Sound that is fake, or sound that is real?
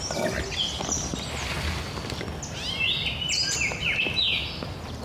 real